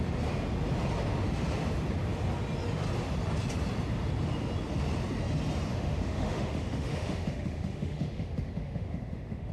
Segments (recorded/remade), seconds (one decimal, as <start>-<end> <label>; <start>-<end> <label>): 0.0-5.7 recorded; 5.7-9.5 remade